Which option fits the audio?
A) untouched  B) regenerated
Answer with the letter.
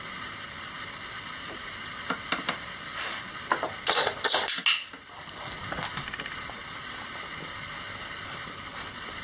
A